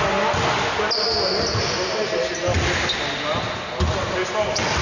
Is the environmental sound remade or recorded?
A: recorded